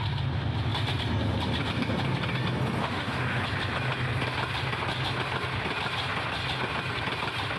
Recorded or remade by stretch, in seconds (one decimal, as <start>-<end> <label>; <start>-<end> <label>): 0.0-2.8 recorded; 2.8-3.4 remade; 3.4-7.6 recorded